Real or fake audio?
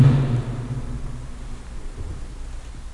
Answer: real